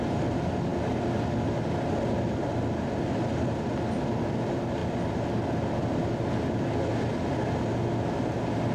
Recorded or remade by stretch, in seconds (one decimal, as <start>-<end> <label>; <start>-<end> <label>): 0.0-8.7 recorded